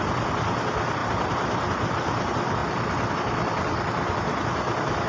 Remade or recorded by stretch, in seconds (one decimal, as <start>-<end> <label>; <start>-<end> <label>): 0.0-5.1 recorded